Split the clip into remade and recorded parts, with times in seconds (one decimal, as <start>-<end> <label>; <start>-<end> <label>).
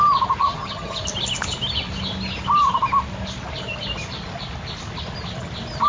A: 0.0-0.4 recorded; 0.4-1.0 remade; 1.0-5.9 recorded